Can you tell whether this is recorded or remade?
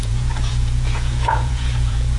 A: remade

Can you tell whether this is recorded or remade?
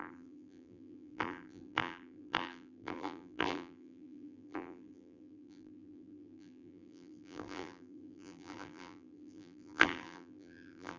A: remade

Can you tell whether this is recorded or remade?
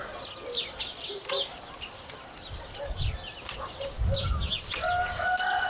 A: recorded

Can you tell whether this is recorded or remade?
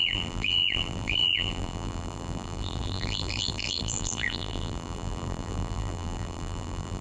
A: remade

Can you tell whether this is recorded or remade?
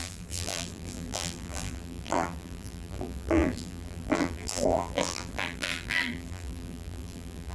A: remade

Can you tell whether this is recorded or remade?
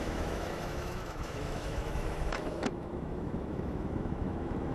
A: remade